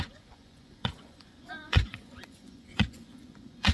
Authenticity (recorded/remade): remade